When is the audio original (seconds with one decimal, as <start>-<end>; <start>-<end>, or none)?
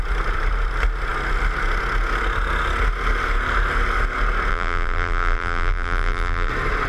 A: 0.0-4.5; 6.5-6.9